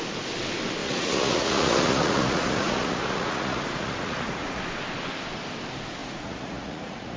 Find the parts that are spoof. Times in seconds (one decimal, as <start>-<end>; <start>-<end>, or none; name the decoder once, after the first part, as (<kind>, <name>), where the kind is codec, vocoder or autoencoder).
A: 0.8-4.6 (vocoder, Vocos); 6.0-7.2